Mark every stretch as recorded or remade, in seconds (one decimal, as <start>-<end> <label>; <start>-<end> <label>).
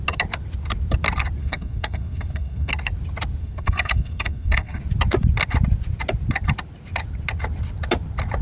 0.0-1.4 recorded; 1.4-2.7 remade; 2.7-3.4 recorded; 3.4-4.8 remade; 4.8-8.4 recorded